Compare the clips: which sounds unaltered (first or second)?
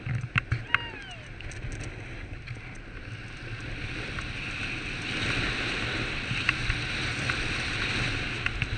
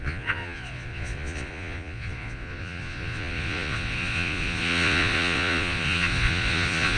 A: first